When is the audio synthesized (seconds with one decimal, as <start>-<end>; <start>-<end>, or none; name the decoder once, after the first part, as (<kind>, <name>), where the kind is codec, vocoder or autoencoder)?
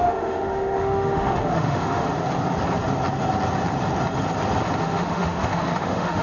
0.0-2.1 (autoencoder, DAC-VAE); 4.8-6.2